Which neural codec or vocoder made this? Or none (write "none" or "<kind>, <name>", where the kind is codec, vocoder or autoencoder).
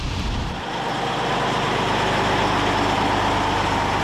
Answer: vocoder, BigVGAN v2